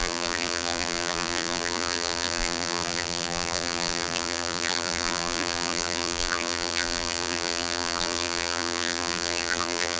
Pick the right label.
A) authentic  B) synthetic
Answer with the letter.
B